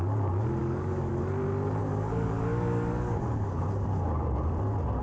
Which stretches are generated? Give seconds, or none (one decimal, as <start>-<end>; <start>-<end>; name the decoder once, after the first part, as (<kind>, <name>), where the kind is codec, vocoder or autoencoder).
0.6-1.1 (codec, DAC); 1.8-3.6